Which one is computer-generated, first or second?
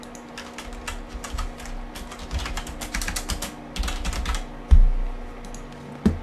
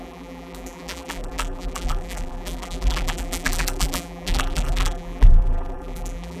second